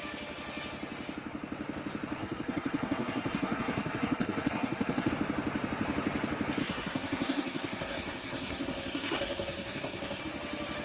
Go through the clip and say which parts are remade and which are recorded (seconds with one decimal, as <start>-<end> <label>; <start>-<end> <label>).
0.0-2.2 recorded; 2.2-5.1 remade; 5.1-6.6 recorded; 6.6-10.2 remade; 10.2-10.8 recorded